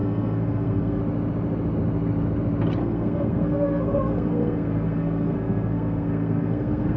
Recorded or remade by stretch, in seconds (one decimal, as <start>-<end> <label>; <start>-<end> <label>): 0.0-1.0 remade; 1.0-2.8 recorded; 2.8-7.0 remade